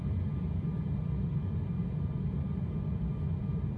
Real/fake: fake